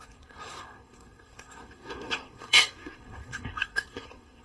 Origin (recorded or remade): remade